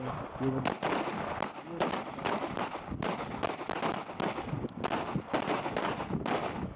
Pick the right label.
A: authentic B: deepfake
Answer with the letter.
A